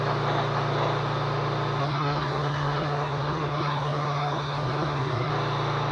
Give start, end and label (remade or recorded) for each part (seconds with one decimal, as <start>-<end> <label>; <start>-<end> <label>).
0.0-1.8 recorded; 1.8-5.3 remade; 5.3-5.9 recorded